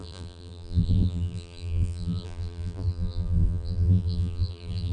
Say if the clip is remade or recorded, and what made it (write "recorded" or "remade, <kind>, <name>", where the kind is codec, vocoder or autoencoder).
remade, vocoder, BigVGAN v2